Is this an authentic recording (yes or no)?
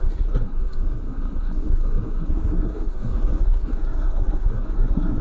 no